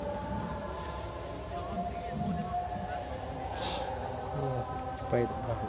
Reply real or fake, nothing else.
real